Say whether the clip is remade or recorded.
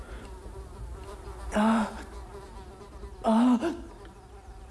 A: recorded